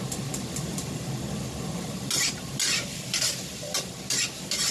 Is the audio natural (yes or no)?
yes